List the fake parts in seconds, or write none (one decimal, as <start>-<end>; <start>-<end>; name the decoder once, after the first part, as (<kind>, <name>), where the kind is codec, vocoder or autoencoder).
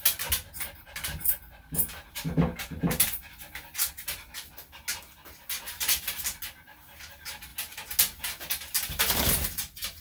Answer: 2.6-3.9 (vocoder, BigVGAN v2)